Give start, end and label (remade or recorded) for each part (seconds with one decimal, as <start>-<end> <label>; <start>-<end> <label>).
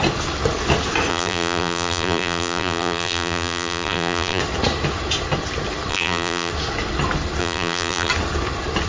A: 0.0-1.1 recorded; 1.1-4.4 remade; 4.4-5.9 recorded; 5.9-6.5 remade; 6.5-7.4 recorded; 7.4-8.1 remade; 8.1-8.9 recorded